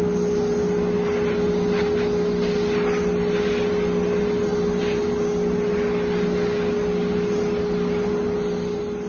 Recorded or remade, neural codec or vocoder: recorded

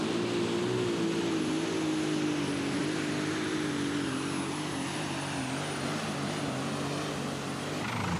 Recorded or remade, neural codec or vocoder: recorded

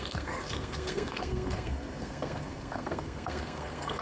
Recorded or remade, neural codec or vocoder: remade, codec, SNAC